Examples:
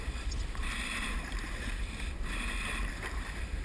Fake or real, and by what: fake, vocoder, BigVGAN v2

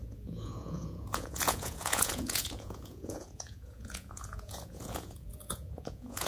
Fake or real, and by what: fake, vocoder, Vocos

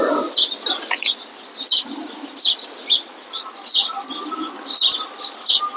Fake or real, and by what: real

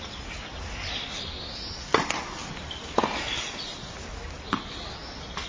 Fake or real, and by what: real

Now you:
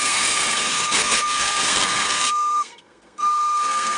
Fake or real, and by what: fake, codec, SNAC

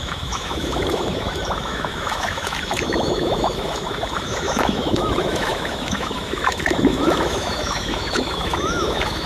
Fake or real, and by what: fake, autoencoder, DAC-VAE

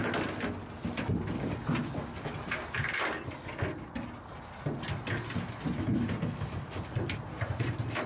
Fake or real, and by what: real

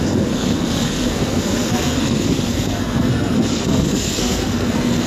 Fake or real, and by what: fake, codec, SNAC